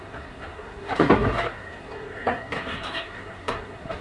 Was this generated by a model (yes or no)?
yes